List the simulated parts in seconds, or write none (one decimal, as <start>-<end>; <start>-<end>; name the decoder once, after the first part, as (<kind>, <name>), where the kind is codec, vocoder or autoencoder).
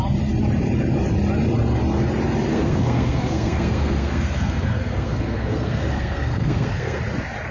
2.5-7.0 (codec, SNAC)